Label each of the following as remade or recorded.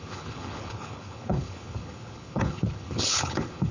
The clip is remade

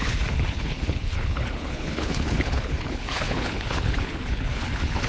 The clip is remade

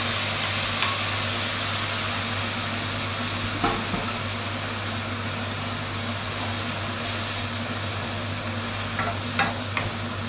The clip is recorded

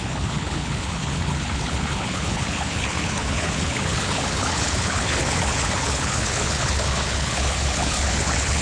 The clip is remade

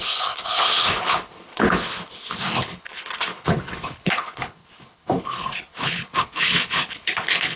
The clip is remade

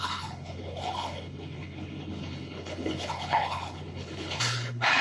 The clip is remade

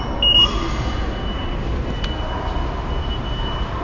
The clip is recorded